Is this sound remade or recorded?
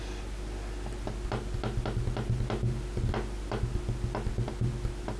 recorded